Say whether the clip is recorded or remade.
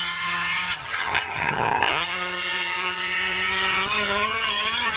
remade